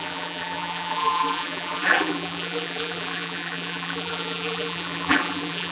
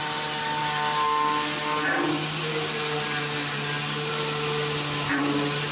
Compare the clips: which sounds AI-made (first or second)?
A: first